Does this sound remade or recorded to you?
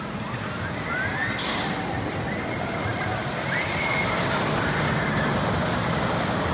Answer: recorded